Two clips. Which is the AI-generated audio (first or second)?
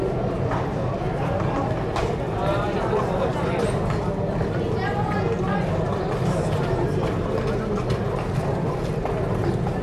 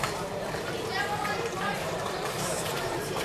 second